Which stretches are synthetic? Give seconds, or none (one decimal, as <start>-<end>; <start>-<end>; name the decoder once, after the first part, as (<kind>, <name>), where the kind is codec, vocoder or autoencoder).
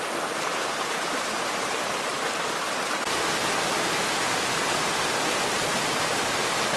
0.5-2.2 (vocoder, BigVGAN v2)